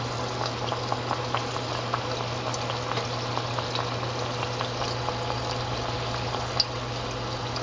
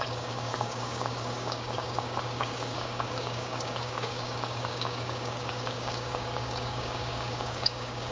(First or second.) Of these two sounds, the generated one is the second